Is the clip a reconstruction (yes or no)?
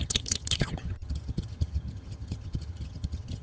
yes